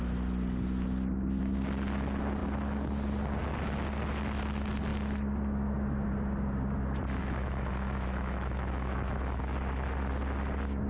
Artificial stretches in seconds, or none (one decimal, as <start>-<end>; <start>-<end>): 7.2-9.4

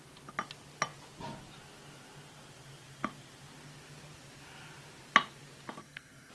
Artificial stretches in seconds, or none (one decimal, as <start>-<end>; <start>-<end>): 5.8-6.3

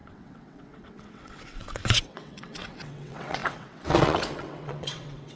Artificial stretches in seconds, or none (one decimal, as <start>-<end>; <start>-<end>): 0.0-5.4

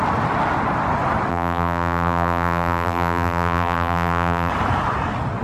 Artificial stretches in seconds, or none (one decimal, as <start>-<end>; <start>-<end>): 1.3-4.5